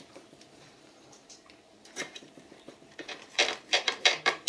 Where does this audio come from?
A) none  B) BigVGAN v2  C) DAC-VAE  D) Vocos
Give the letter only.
B